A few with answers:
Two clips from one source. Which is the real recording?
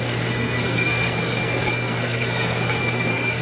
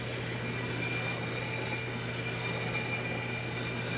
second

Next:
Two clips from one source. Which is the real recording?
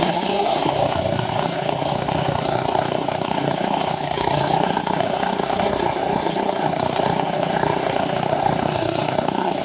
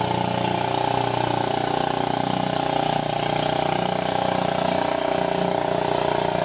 second